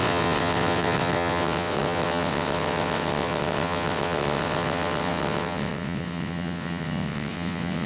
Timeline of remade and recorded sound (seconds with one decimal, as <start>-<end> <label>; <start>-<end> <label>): 0.0-7.9 remade